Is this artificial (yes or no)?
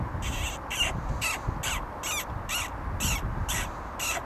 no